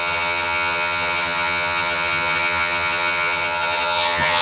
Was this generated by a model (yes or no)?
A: yes